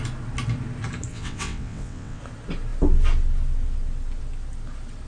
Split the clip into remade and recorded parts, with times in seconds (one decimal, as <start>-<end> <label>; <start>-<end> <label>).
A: 0.0-1.1 recorded; 1.1-2.2 remade; 2.2-5.1 recorded